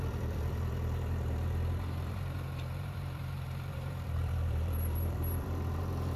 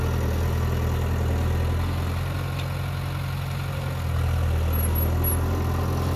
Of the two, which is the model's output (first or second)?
first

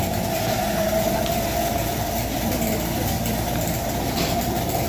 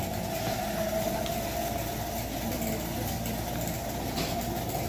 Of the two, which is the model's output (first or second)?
first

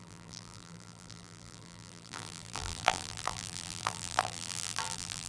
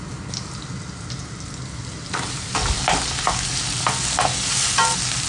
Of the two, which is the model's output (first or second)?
first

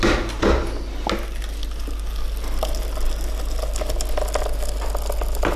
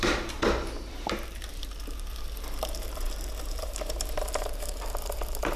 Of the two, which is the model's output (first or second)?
second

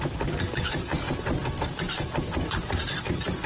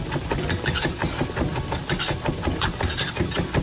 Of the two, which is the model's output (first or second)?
first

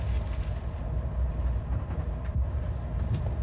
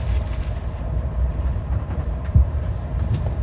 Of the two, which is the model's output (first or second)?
second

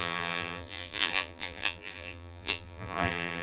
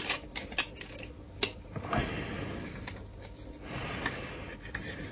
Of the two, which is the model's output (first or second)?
first